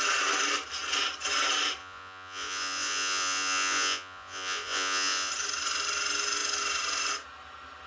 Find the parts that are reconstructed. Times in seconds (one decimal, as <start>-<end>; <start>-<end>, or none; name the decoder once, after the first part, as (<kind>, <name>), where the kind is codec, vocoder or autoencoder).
1.8-5.3 (vocoder, Vocos)